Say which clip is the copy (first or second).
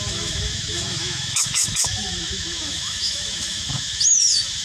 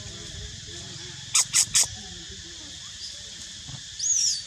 first